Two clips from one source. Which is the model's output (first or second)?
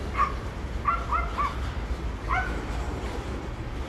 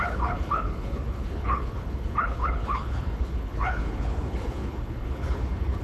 second